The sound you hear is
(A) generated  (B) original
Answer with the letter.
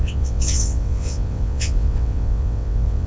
A